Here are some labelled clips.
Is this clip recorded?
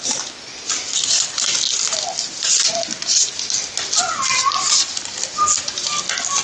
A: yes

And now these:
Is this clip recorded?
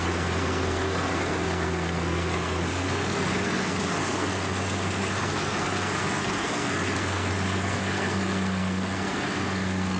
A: no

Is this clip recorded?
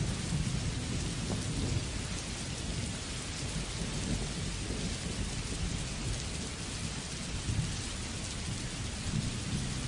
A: yes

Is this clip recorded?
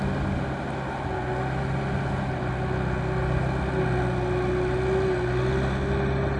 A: yes